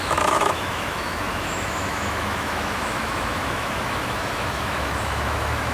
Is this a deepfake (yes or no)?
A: yes